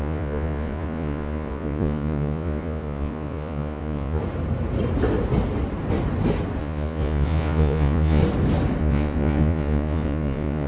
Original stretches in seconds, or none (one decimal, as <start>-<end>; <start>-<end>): 4.2-6.6; 8.2-8.8